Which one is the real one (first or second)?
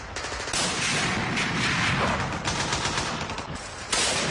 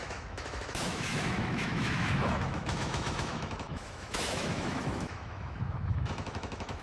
first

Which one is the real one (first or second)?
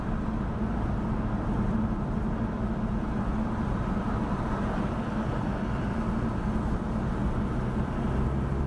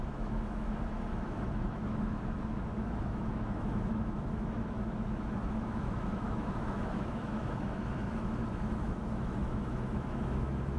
first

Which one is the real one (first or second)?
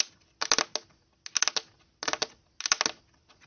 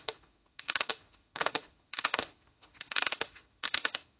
first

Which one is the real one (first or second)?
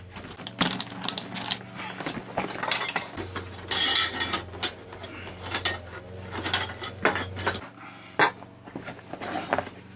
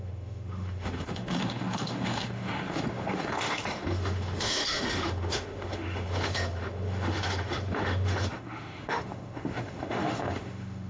first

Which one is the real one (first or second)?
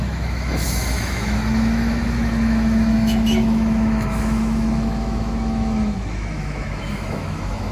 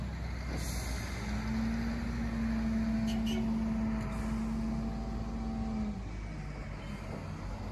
second